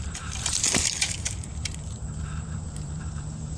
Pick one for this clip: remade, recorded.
remade